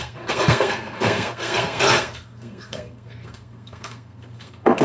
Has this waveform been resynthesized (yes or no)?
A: yes